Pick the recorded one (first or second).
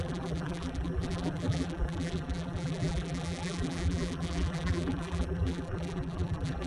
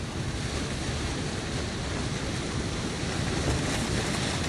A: second